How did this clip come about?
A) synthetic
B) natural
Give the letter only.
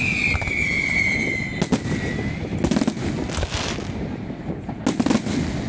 B